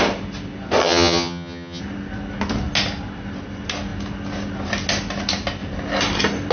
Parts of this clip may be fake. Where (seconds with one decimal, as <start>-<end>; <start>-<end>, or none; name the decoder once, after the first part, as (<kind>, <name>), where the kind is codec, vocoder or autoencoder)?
0.8-1.8 (vocoder, HiFi-GAN)